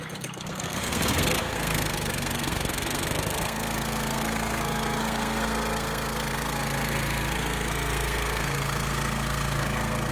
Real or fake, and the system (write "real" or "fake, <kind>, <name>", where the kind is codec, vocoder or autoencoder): fake, codec, SNAC